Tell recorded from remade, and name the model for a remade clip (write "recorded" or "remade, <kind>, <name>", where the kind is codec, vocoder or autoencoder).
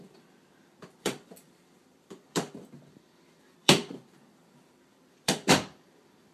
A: remade, vocoder, BigVGAN v2